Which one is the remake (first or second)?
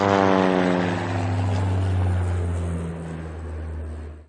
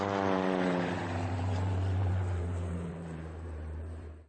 second